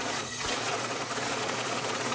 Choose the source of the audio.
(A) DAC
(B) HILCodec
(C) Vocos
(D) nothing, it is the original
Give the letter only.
C